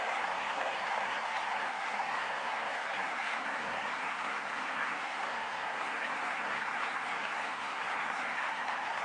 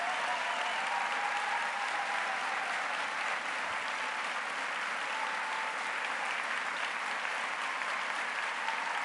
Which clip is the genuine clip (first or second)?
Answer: second